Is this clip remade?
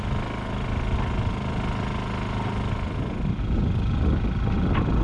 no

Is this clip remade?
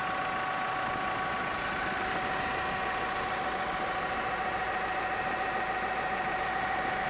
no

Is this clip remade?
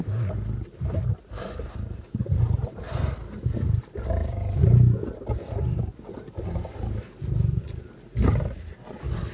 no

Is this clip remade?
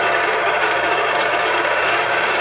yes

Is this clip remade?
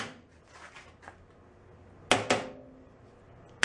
no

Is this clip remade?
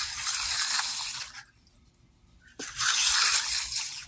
no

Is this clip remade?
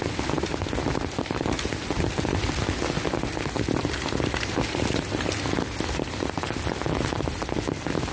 no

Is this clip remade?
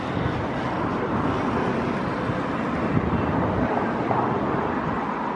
no